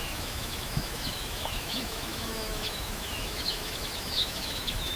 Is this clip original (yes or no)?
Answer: no